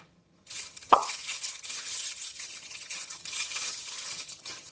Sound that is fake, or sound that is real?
fake